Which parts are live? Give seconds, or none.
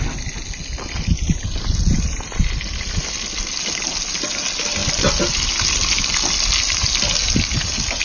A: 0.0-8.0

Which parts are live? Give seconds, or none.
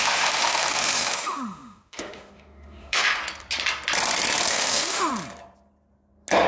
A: 3.2-4.5; 5.1-6.5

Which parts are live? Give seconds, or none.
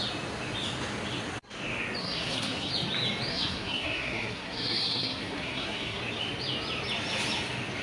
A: 0.0-2.0; 2.7-3.3; 6.0-7.8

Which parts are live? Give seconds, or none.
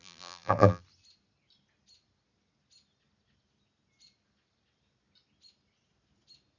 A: 0.8-6.6